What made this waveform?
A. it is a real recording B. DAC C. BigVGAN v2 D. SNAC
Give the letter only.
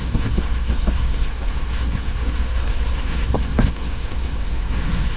D